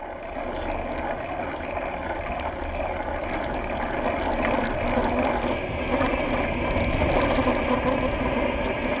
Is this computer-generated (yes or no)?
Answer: no